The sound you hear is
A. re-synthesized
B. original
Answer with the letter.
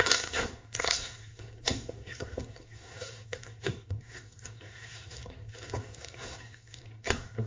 A